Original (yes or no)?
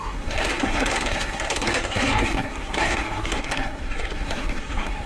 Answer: no